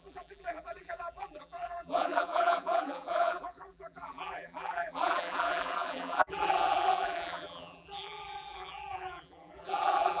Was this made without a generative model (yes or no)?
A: no